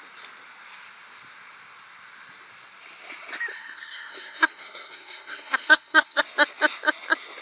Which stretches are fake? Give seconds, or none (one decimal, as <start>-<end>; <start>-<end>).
3.5-6.2